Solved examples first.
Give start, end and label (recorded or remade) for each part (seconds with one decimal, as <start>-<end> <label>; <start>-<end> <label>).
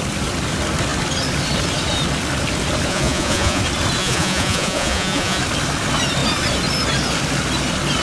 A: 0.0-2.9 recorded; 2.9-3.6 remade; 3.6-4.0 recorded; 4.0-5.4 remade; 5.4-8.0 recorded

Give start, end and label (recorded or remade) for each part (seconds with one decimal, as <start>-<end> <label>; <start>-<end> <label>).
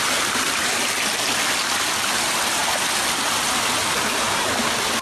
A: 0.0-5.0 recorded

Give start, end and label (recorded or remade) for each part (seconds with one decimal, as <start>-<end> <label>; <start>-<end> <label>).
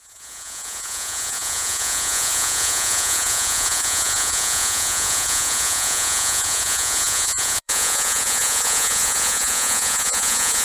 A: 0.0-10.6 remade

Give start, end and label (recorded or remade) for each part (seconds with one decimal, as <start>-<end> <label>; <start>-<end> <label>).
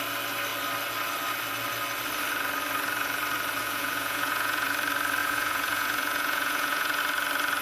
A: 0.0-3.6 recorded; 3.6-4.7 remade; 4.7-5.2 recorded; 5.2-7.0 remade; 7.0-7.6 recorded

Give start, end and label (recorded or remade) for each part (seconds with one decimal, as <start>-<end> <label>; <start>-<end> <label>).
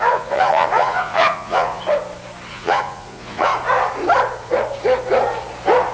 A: 0.0-1.8 remade; 1.8-2.5 recorded; 2.5-3.5 remade; 3.5-5.9 recorded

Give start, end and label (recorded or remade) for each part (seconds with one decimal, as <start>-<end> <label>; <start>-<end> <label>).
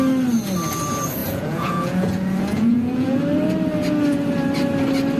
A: 0.0-1.2 recorded; 1.2-3.2 remade; 3.2-5.2 recorded